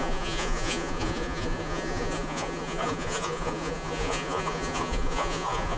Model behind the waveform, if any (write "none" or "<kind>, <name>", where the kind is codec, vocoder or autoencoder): vocoder, Vocos